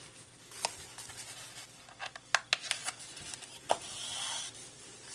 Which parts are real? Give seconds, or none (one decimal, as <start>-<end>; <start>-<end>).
0.0-5.1